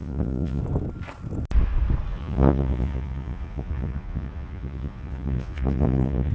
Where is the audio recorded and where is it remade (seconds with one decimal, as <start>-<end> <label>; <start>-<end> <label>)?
0.0-0.6 remade; 0.6-2.1 recorded; 2.1-6.3 remade